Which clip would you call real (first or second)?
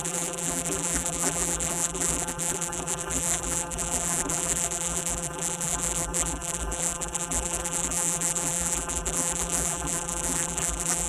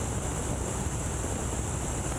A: second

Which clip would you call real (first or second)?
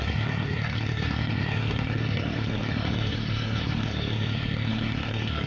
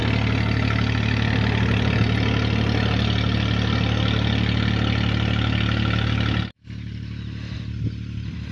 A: second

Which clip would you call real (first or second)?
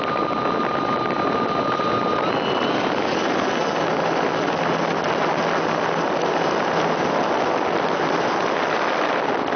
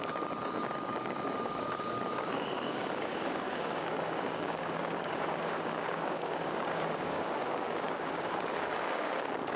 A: first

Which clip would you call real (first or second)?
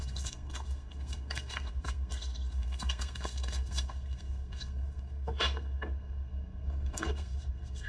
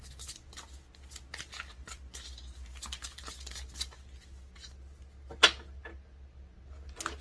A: second